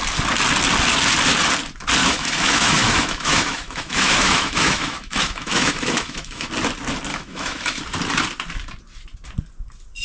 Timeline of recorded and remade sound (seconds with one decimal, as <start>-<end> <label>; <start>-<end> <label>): 0.0-2.0 recorded; 2.0-6.5 remade; 6.5-7.1 recorded; 7.1-7.8 remade; 7.8-10.0 recorded